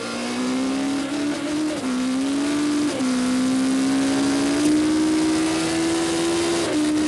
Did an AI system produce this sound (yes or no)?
no